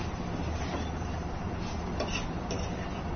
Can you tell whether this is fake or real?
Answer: real